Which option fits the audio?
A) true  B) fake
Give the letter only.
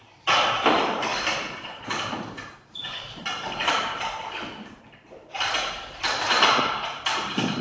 B